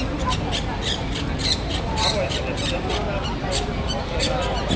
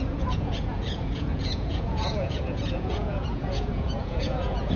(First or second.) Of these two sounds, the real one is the first